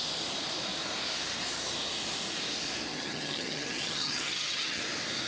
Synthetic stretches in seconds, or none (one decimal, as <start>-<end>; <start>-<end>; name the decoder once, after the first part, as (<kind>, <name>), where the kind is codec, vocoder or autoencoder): 2.9-4.8 (vocoder, HiFi-GAN)